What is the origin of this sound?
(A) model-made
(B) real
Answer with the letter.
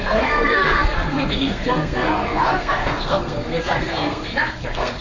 A